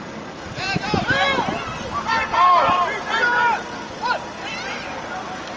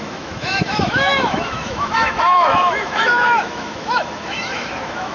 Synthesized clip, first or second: second